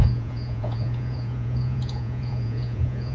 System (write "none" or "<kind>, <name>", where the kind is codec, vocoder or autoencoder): vocoder, Vocos